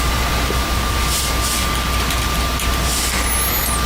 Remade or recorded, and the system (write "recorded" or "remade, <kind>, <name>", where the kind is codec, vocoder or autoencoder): recorded